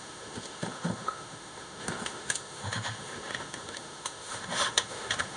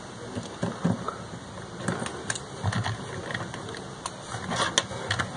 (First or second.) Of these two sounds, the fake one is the first